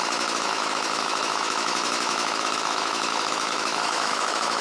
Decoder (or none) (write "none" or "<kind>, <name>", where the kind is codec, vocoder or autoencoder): autoencoder, DAC-VAE